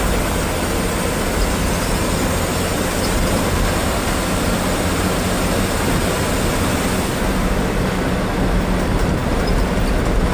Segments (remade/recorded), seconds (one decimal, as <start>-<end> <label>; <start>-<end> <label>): 0.0-3.8 recorded; 3.8-4.5 remade; 4.5-6.5 recorded; 6.5-7.1 remade; 7.1-10.3 recorded